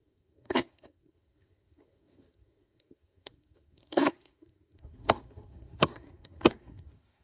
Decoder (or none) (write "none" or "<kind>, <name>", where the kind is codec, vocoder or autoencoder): codec, SNAC